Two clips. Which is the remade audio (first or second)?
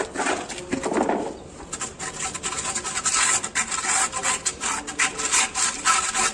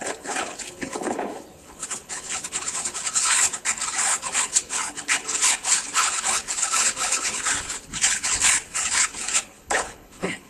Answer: second